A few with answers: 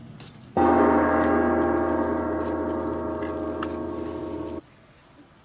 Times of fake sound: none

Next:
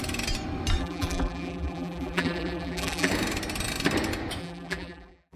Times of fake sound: 0.8-3.1 (vocoder, BigVGAN v2); 4.4-5.4